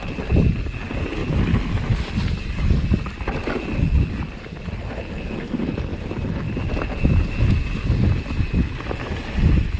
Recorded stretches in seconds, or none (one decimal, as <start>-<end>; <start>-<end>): 0.0-9.8